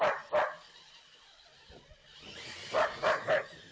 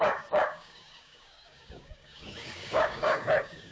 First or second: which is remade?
second